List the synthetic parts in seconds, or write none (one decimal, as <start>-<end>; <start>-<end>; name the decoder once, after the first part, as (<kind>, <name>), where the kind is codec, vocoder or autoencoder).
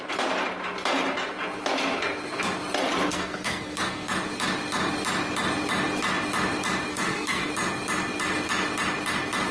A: 3.1-4.1 (codec, SNAC); 6.9-7.5